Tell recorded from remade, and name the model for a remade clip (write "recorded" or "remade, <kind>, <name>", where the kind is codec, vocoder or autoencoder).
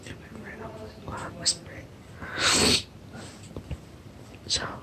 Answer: recorded